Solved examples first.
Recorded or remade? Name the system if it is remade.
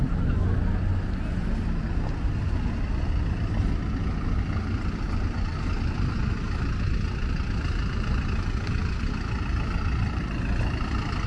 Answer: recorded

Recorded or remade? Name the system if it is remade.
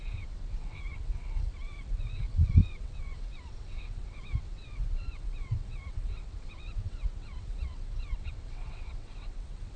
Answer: remade, vocoder, WaveNeXt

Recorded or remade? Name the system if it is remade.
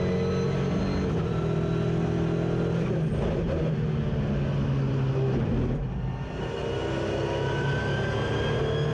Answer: recorded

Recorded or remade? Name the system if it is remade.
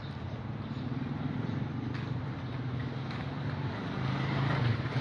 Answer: recorded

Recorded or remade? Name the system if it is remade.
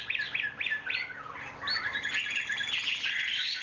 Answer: recorded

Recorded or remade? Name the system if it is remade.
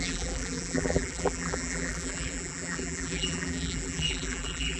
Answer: remade, vocoder, BigVGAN v2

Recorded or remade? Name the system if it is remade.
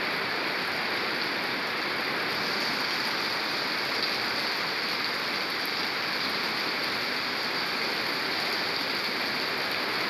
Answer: recorded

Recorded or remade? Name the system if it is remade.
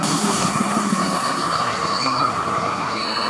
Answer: remade, codec, SNAC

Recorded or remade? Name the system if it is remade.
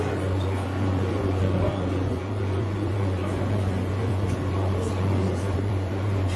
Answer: remade, vocoder, Vocos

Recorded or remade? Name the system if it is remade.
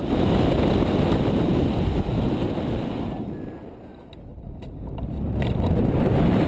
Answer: recorded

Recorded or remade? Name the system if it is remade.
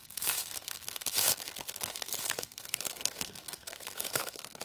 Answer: remade, codec, SNAC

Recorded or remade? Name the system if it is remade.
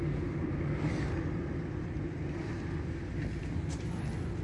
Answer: recorded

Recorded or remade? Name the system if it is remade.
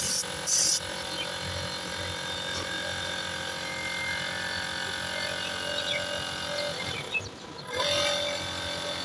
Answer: recorded